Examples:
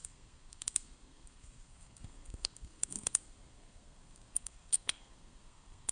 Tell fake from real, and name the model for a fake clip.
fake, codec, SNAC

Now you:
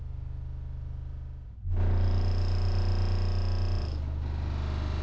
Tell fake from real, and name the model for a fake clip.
real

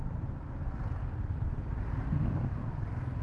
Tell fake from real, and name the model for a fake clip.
real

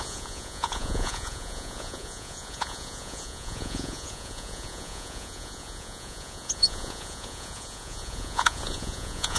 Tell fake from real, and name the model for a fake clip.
fake, vocoder, Vocos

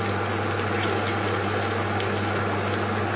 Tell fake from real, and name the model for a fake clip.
real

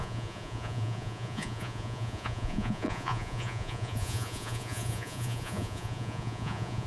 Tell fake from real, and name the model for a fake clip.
fake, vocoder, Vocos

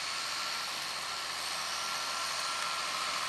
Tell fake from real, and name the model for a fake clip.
real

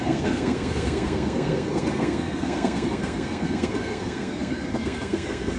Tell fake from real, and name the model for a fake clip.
fake, codec, SNAC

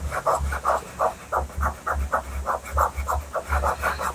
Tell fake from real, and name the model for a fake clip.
real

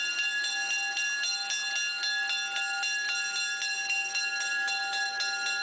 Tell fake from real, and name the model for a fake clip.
real